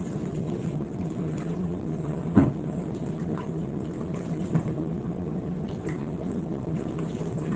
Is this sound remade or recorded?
remade